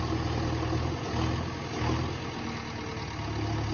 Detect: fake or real real